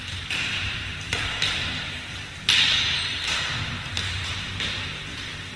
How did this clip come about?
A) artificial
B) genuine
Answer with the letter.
A